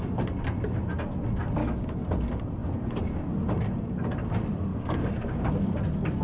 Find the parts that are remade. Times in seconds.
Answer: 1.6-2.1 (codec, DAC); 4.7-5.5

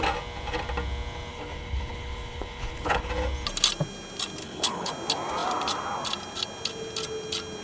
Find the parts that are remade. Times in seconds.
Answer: 1.3-3.1 (codec, HILCodec); 4.4-4.9

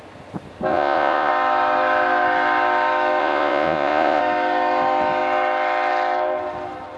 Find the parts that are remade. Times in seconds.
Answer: 0.7-1.3 (vocoder, Vocos); 3.2-4.2

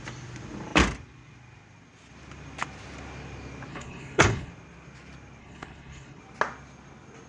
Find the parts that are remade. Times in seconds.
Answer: 3.7-4.5 (codec, HILCodec); 5.4-6.2